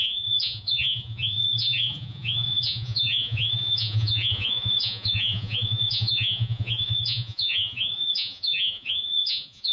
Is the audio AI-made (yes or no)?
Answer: yes